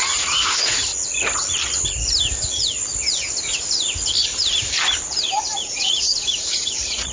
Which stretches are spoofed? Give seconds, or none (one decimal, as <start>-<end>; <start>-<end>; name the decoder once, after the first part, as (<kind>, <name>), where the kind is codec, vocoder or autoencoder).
0.0-0.9 (vocoder, Vocos); 2.4-2.8; 5.4-7.1